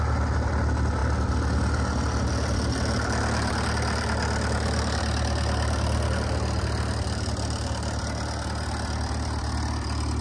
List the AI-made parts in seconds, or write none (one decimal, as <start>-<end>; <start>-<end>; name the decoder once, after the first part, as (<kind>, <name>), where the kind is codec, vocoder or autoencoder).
none